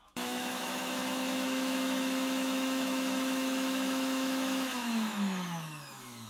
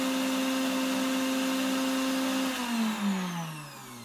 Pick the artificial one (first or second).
first